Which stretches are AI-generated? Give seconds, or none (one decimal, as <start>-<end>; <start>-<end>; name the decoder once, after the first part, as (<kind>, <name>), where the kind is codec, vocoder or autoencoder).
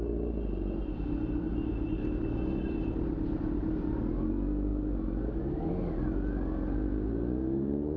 none